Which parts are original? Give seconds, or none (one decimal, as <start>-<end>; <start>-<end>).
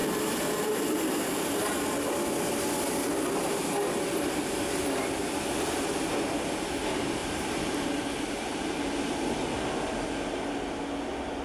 1.1-7.2; 7.7-11.4